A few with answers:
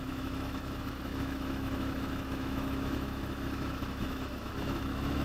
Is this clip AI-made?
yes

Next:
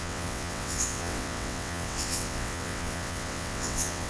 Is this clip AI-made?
yes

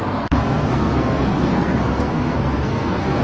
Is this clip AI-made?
yes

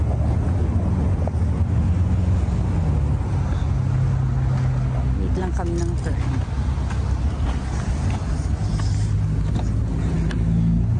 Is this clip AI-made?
no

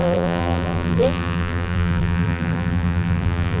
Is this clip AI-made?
yes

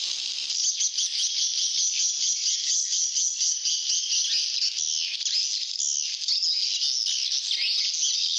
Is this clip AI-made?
no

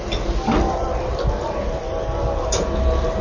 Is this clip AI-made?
no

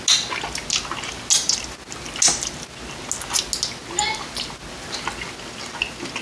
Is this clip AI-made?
no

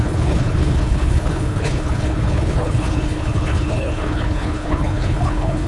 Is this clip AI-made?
yes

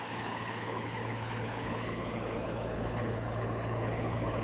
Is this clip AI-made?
yes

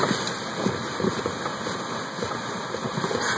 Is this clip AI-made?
no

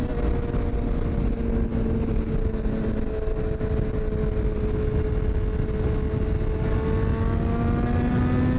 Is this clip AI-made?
no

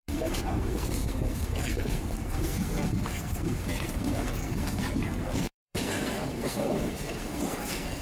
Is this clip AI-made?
yes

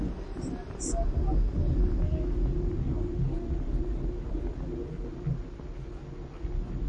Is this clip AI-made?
no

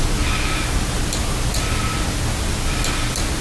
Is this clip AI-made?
no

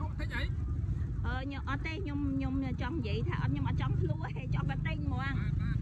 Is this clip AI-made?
no